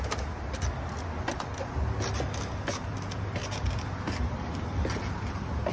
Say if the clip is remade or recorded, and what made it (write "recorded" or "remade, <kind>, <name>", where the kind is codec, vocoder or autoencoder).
recorded